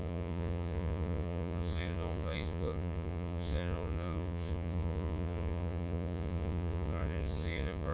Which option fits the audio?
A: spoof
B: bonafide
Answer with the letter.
A